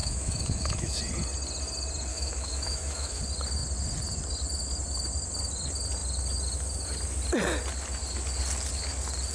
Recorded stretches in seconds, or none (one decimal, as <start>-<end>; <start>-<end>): 1.0-2.1; 3.2-9.3